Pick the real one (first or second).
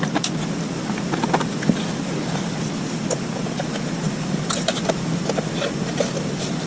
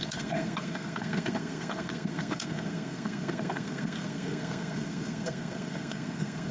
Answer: first